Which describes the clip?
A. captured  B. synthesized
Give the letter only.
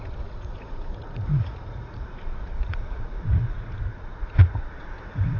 B